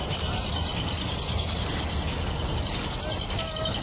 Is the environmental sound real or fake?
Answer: real